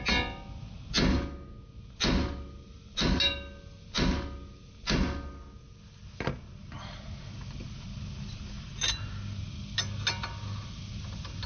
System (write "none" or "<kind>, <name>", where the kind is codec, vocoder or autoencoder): none